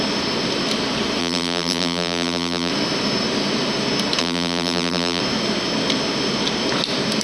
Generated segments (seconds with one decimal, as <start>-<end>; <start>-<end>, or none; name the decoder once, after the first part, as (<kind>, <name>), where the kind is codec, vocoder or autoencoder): 1.2-2.7 (vocoder, BigVGAN v2); 4.2-5.2

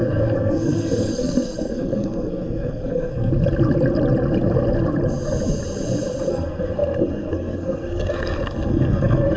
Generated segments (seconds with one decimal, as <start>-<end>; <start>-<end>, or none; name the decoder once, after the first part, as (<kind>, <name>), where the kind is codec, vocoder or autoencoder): 0.0-3.3 (codec, SNAC); 6.3-9.4